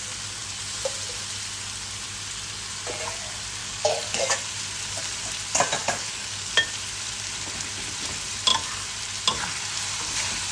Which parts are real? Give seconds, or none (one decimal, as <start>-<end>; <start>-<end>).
0.0-3.6; 4.2-5.8; 6.5-10.5